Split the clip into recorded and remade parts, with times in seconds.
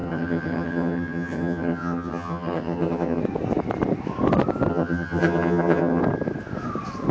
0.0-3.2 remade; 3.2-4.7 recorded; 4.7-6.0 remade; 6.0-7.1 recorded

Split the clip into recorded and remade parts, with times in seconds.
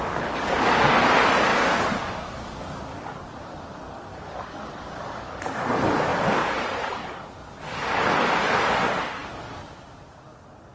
0.0-10.7 recorded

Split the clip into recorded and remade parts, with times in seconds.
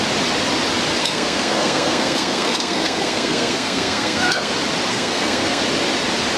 0.0-1.0 recorded; 1.0-4.5 remade; 4.5-4.9 recorded; 4.9-5.6 remade; 5.6-6.4 recorded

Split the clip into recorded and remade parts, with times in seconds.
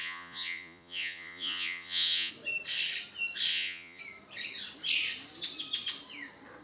0.0-2.3 remade; 2.3-3.5 recorded; 3.5-4.0 remade; 4.0-6.6 recorded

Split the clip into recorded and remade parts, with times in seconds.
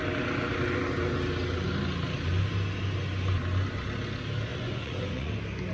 0.0-4.5 recorded; 4.5-5.3 remade; 5.3-5.7 recorded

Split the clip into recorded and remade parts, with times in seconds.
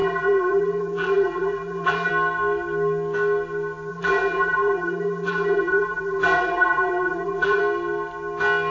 0.0-2.1 remade; 2.1-3.9 recorded; 3.9-7.6 remade; 7.6-8.7 recorded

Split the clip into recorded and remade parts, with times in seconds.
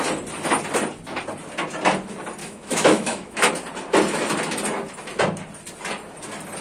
0.0-2.4 recorded; 2.4-3.5 remade; 3.5-6.6 recorded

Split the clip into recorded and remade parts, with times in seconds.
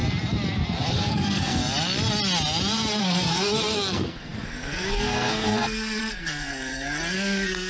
0.0-0.9 recorded; 0.9-1.6 remade; 1.6-3.0 recorded; 3.0-7.7 remade